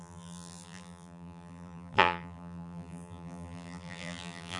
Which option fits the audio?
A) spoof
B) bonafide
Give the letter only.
A